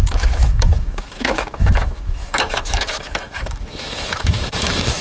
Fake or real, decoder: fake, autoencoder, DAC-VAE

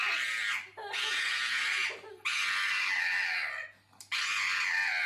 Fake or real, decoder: real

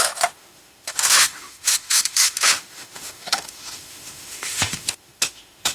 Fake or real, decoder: fake, autoencoder, DAC-VAE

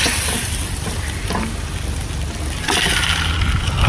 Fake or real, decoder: real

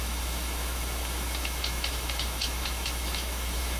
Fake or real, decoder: fake, autoencoder, DAC-VAE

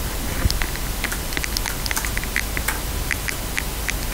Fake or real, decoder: real